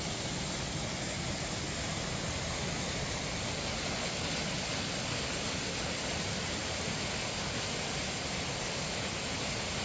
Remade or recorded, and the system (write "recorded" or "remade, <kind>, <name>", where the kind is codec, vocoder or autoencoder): recorded